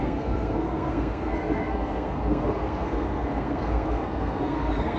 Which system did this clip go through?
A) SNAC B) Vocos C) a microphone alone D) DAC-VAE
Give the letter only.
A